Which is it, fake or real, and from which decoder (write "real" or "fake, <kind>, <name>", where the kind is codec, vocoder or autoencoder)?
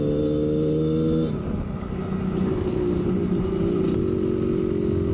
real